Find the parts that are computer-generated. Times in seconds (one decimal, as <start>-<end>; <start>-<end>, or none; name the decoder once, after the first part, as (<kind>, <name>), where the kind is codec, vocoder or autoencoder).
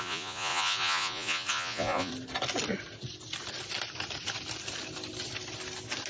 0.0-2.1 (vocoder, Vocos)